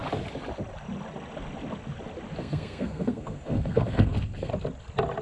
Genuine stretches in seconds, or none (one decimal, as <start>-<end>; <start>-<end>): 0.0-2.4; 4.5-5.2